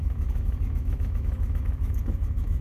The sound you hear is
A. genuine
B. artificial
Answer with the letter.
B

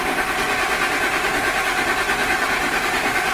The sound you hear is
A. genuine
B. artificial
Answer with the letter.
A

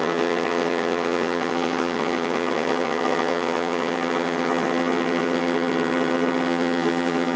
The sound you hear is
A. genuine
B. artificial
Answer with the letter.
B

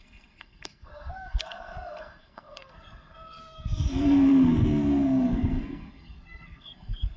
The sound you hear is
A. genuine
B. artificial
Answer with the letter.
B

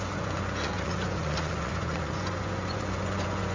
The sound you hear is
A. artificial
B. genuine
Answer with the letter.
A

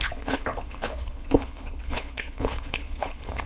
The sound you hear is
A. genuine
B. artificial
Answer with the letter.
B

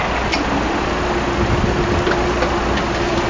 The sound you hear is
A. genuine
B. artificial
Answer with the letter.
A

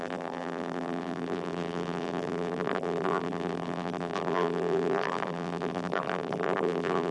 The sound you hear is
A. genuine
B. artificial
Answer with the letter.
B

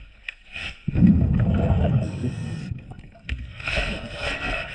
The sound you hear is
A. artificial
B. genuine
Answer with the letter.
A